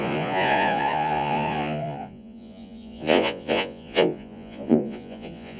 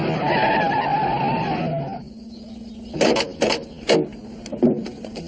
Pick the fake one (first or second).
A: first